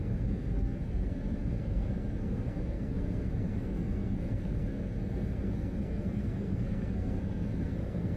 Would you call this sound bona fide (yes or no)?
no